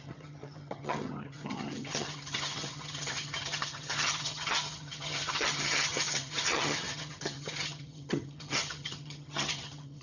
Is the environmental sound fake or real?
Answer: fake